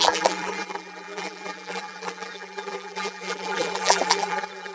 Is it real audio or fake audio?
fake